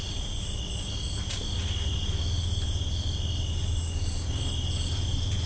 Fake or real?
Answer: real